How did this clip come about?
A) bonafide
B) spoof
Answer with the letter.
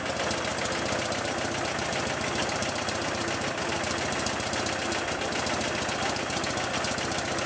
A